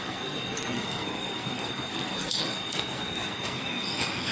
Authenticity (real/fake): fake